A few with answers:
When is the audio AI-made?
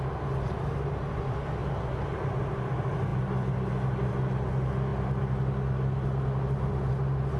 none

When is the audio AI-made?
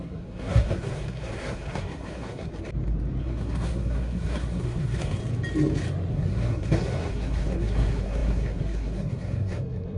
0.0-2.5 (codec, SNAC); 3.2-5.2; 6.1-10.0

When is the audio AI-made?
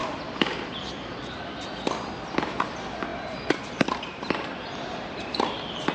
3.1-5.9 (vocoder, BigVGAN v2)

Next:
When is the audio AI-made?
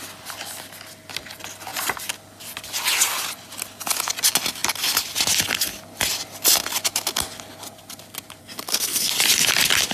8.4-9.1 (codec, SNAC)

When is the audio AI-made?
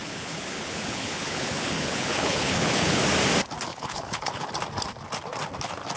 0.0-3.0 (codec, HILCodec); 3.7-4.5